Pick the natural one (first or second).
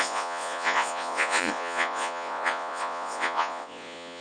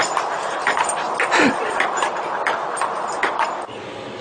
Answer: second